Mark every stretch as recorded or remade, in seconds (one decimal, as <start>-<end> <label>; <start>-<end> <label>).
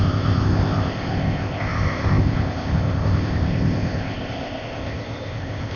0.0-5.8 remade